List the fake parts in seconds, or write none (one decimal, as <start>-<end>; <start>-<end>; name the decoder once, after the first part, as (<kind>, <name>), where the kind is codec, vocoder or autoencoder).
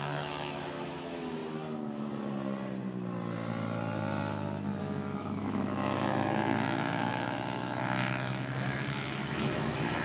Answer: 0.0-1.4 (autoencoder, DAC-VAE); 4.8-10.0